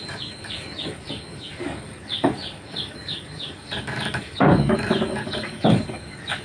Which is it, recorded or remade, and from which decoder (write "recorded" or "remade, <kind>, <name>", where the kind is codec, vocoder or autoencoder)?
remade, codec, DAC